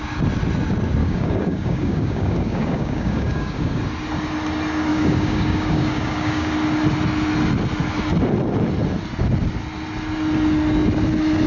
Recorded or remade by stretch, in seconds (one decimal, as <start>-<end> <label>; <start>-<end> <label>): 0.0-1.0 recorded; 1.0-3.8 remade; 3.8-4.9 recorded; 4.9-6.5 remade; 6.5-11.5 recorded